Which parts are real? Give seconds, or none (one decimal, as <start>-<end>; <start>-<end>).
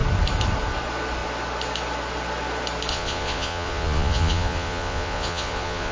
0.0-2.9